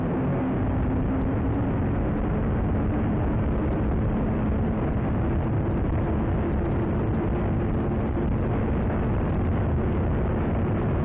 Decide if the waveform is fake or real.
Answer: real